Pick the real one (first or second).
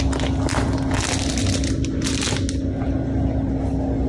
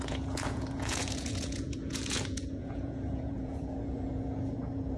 first